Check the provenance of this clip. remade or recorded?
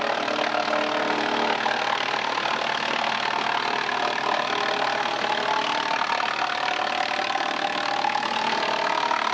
recorded